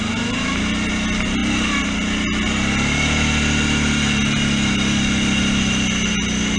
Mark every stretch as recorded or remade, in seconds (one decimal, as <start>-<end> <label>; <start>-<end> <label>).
0.0-6.6 recorded